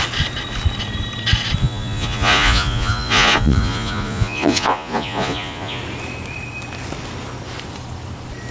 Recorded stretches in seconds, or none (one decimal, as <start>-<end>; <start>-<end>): 0.0-1.6; 5.8-8.5